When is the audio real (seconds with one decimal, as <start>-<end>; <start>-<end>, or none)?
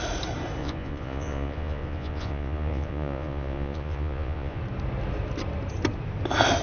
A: 0.0-0.6; 4.6-6.6